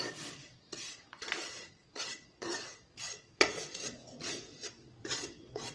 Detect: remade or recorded remade